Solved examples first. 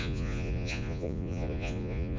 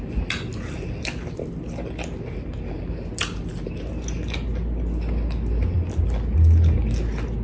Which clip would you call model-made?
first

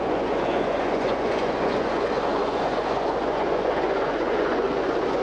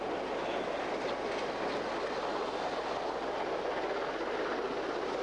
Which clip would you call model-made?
first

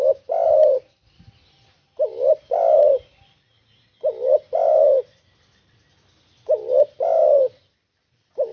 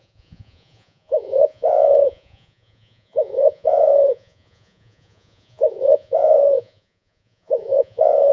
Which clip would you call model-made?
second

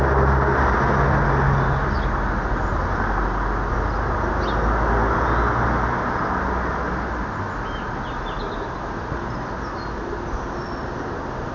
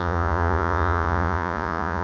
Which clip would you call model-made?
second